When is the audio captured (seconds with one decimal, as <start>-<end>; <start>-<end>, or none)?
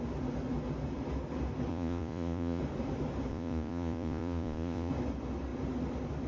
0.0-1.7; 2.6-3.3; 4.9-6.3